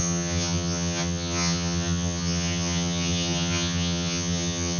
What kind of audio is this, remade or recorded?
remade